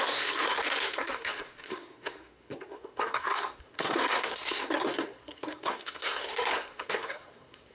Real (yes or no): no